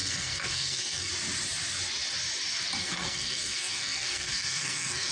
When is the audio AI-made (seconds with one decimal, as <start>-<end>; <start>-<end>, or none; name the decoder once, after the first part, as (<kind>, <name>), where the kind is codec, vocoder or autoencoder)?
0.0-1.1 (codec, SNAC); 2.8-5.1